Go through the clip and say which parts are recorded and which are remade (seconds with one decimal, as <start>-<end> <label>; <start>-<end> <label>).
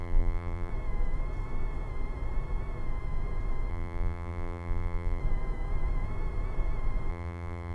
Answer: 0.0-0.7 remade; 0.7-3.7 recorded; 3.7-5.2 remade; 5.2-7.1 recorded; 7.1-7.7 remade